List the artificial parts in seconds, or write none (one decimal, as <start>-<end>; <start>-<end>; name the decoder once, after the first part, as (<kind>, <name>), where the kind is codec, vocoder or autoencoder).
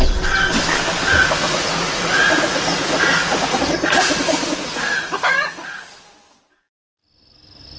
1.1-5.8 (vocoder, Vocos)